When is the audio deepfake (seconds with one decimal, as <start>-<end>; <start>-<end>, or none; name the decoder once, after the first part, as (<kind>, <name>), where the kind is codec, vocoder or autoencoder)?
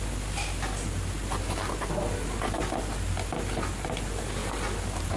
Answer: none